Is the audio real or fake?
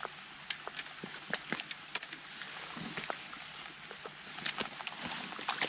real